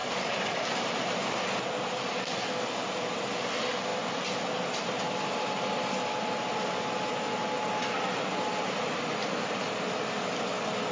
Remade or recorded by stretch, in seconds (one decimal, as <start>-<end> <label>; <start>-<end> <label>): 0.0-1.5 remade; 1.5-9.2 recorded; 9.2-9.8 remade; 9.8-10.9 recorded